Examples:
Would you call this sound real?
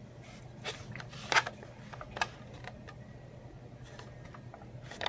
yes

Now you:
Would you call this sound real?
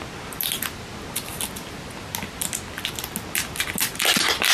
yes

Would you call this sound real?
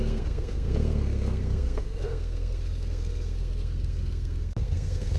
no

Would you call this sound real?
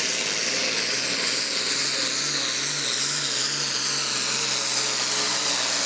yes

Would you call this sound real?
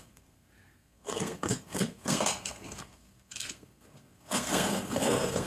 no